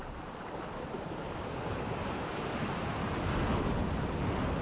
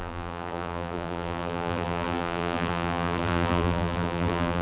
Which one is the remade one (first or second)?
second